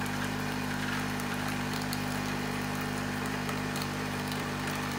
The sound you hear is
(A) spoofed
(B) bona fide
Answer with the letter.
A